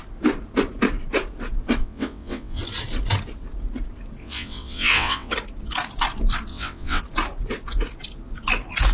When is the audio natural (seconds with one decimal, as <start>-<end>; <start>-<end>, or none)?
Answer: 0.0-1.8; 2.6-4.2; 5.3-6.5; 7.0-8.9

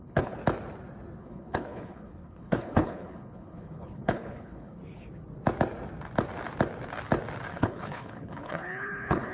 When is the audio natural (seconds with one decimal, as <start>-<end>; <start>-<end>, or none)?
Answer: 0.4-1.2; 4.8-7.5

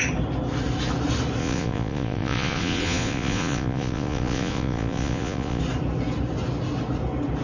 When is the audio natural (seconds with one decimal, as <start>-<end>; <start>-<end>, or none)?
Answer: 0.0-1.4; 5.6-7.4

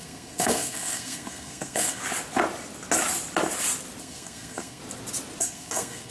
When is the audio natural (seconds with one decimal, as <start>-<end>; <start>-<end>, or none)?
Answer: 2.0-4.0; 4.8-5.4

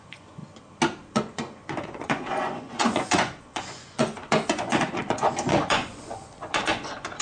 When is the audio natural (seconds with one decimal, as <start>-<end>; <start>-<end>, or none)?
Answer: 0.4-1.1

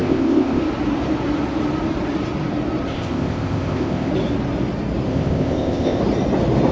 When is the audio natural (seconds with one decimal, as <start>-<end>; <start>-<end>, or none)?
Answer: 0.6-2.9; 4.1-5.1; 6.0-6.7

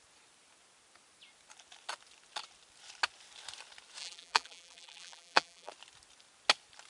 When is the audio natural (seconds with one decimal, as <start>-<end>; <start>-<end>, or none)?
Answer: 0.0-4.0; 5.7-6.9